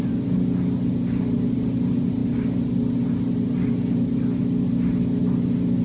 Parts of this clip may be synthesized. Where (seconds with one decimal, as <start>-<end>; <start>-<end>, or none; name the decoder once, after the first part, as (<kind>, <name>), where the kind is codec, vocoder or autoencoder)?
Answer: none